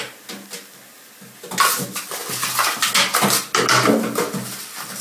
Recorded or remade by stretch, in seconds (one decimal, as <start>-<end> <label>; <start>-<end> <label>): 0.0-5.0 recorded